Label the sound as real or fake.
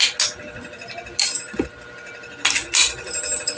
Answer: real